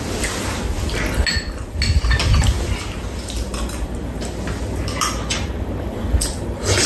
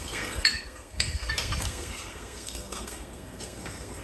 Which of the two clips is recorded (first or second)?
first